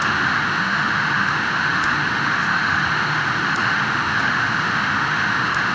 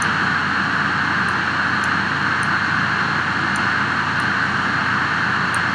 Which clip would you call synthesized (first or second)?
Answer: first